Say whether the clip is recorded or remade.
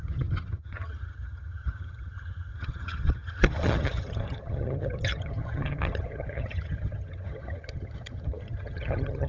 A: remade